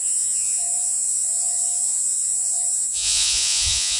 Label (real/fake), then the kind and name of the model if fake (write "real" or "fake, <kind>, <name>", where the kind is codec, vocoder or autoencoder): fake, vocoder, Vocos